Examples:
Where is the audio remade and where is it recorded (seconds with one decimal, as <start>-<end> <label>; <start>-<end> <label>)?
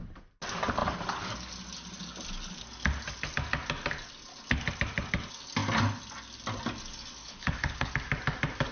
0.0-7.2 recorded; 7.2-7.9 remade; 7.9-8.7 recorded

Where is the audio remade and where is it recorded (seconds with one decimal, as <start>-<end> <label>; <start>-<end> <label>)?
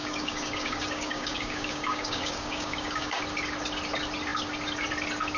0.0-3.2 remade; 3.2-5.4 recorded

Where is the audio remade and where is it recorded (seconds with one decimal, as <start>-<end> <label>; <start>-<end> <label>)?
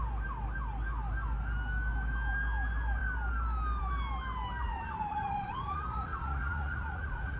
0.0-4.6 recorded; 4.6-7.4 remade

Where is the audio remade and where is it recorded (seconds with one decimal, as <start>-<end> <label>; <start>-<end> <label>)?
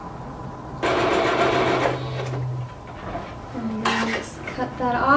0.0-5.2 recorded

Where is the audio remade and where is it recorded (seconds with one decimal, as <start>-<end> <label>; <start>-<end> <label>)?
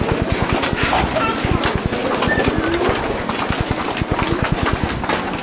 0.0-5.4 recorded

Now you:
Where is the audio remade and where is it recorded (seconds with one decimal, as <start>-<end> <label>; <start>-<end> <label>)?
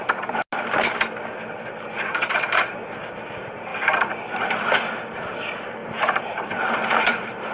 0.0-1.5 recorded; 1.5-7.5 remade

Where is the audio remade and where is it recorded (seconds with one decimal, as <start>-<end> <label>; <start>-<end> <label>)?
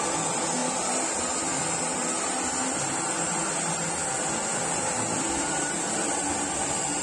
0.0-7.0 recorded